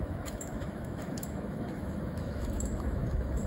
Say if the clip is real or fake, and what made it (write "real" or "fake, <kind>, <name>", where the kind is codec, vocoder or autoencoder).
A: fake, autoencoder, DAC-VAE